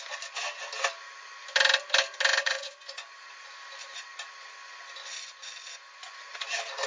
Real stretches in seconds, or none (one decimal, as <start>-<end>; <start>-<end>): 0.0-2.4; 3.2-5.8; 6.4-6.9